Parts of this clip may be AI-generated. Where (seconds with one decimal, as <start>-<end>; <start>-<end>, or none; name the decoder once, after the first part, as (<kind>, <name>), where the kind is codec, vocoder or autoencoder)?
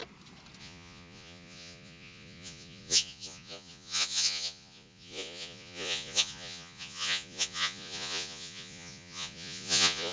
0.6-10.1 (vocoder, Vocos)